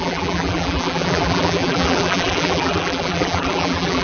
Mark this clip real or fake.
fake